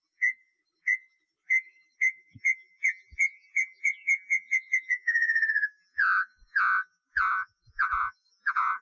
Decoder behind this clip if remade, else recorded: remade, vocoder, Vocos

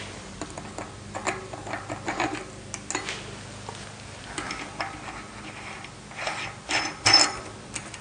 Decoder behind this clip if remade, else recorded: recorded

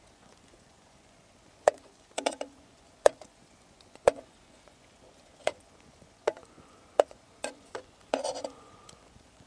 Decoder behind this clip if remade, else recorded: remade, vocoder, Vocos